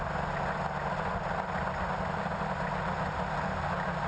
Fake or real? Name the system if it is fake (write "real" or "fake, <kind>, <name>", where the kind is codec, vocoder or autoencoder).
real